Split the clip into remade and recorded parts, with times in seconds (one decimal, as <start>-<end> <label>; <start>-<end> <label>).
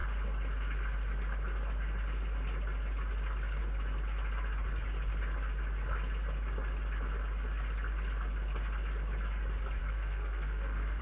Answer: 0.0-9.8 recorded; 9.8-11.0 remade